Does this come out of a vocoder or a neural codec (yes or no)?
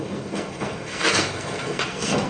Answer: yes